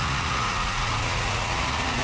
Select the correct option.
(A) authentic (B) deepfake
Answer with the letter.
B